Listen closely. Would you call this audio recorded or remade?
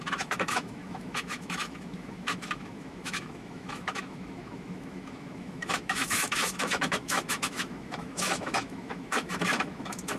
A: remade